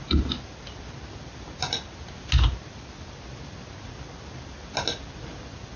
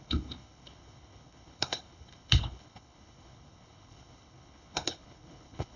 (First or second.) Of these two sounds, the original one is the first